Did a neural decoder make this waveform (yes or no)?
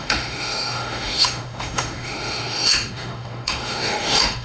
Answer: yes